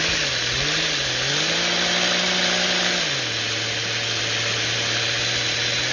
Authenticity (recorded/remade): recorded